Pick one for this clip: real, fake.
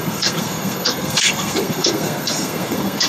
fake